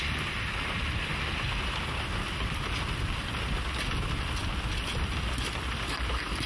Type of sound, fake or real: fake